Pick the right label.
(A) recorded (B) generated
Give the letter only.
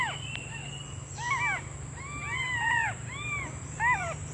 A